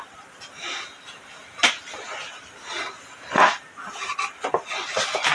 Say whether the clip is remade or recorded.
recorded